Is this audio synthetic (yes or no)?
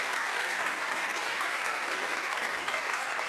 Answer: yes